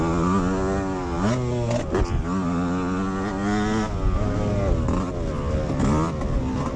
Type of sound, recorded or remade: recorded